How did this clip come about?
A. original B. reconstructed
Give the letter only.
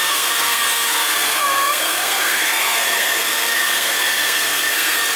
B